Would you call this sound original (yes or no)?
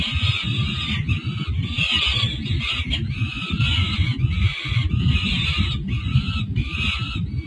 yes